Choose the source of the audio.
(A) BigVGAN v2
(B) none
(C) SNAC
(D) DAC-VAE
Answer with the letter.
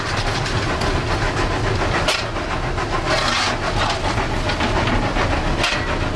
B